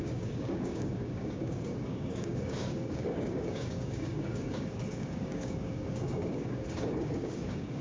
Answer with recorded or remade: remade